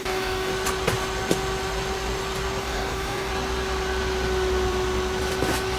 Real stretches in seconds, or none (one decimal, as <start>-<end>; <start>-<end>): 0.5-2.6; 3.3-5.8